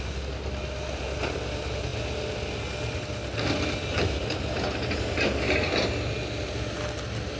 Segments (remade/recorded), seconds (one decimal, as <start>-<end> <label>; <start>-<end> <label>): 0.0-7.4 recorded

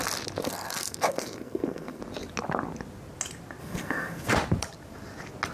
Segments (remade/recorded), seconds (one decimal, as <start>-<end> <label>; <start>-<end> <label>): 0.0-0.4 recorded; 0.4-2.0 remade; 2.0-3.6 recorded; 3.6-4.3 remade; 4.3-5.5 recorded

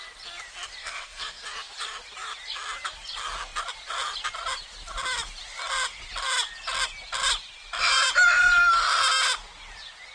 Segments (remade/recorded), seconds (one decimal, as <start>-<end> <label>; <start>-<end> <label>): 0.0-0.8 recorded; 0.8-1.4 remade; 1.4-10.1 recorded